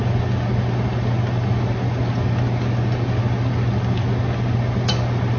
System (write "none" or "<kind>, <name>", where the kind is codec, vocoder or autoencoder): none